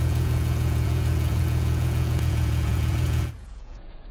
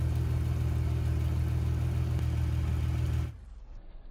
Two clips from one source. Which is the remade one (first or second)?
first